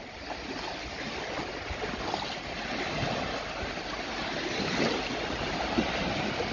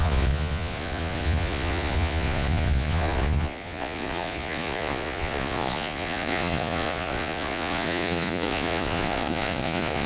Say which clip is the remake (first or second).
second